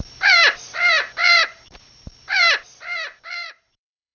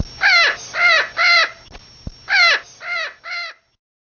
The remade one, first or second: first